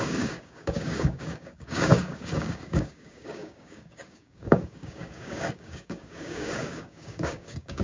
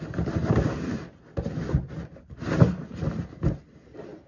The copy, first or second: first